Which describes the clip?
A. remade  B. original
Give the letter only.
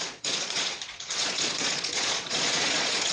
A